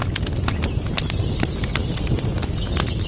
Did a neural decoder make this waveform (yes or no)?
no